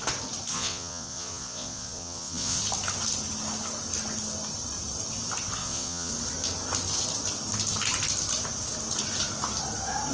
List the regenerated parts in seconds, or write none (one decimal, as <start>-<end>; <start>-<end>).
0.5-2.6; 5.6-6.1